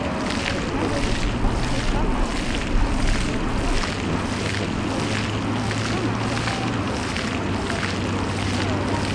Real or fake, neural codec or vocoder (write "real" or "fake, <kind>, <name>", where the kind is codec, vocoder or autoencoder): real